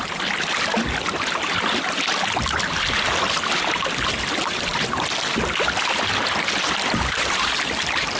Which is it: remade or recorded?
recorded